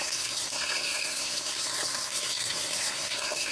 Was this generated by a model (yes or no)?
yes